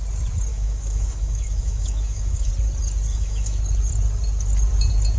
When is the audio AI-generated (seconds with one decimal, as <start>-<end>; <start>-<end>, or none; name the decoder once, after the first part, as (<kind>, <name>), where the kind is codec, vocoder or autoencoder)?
0.5-2.5 (autoencoder, DAC-VAE); 3.1-3.6